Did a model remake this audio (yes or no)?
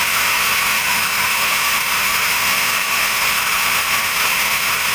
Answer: yes